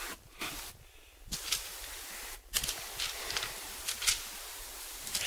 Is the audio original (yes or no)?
yes